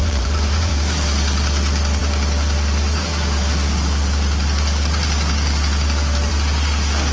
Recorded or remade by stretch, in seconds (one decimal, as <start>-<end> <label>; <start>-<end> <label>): 0.0-0.7 remade; 0.7-7.1 recorded